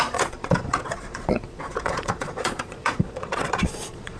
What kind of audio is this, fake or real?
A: fake